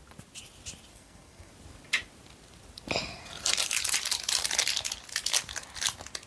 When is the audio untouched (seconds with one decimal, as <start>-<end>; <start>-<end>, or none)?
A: 0.0-0.9; 1.5-6.3

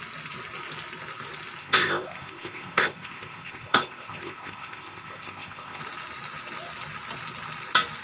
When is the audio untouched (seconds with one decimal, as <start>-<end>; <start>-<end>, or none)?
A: 0.0-1.6; 5.8-8.0